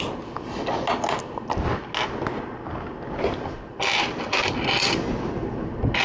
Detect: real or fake real